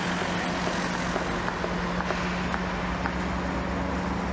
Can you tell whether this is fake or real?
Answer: real